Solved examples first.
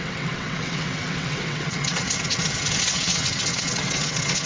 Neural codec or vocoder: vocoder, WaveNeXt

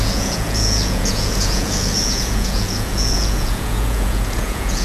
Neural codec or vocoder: vocoder, Vocos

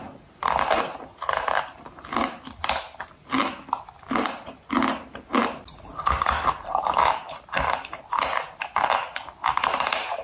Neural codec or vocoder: none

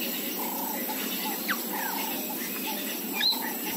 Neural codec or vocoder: none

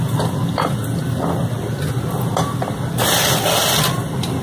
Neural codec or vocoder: none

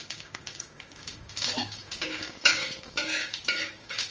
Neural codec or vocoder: codec, DAC